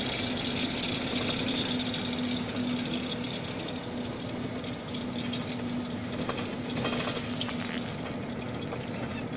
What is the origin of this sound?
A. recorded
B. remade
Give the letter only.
A